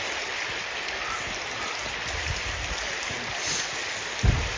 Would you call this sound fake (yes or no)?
no